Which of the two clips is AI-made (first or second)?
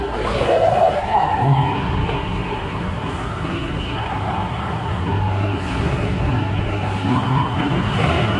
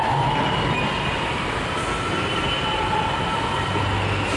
first